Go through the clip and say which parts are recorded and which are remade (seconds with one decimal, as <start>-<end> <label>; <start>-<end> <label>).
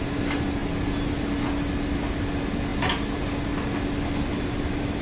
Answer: 0.0-5.0 recorded